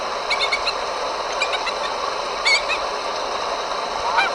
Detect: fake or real real